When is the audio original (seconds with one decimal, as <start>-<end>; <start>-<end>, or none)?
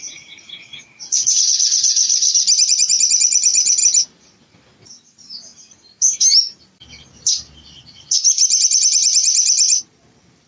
3.8-4.9; 5.5-6.6